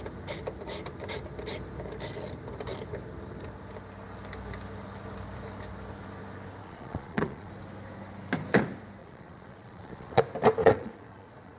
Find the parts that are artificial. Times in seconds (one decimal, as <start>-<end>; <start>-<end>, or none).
6.6-7.5; 9.0-10.2; 10.6-11.6